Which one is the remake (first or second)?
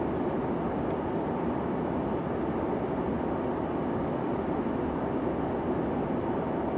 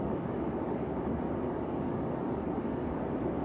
second